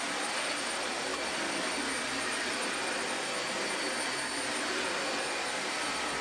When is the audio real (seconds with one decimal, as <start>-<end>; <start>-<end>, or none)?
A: 0.0-6.2